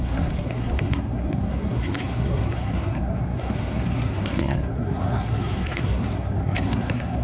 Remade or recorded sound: remade